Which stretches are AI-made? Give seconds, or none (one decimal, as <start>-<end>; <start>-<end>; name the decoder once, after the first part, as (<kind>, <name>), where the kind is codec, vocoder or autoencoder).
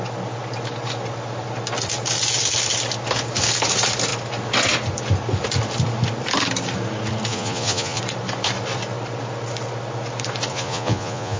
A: 7.3-8.0 (vocoder, Vocos); 10.5-11.4